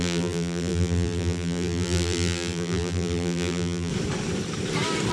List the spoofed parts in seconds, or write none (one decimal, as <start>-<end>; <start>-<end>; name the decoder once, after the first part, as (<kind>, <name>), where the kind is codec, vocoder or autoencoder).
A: 0.0-3.9 (vocoder, BigVGAN v2)